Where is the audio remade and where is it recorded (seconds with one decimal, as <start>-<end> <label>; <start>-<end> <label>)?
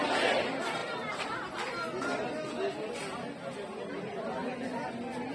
0.0-5.3 recorded